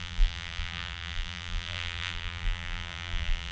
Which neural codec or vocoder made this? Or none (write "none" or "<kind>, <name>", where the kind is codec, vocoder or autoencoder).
vocoder, BigVGAN v2